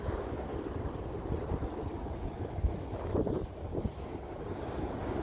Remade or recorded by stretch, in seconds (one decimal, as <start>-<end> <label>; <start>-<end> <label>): 0.0-0.5 remade; 0.5-3.6 recorded; 3.6-5.2 remade